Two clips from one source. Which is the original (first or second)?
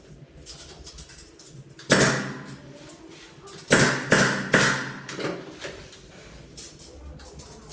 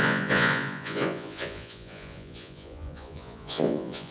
first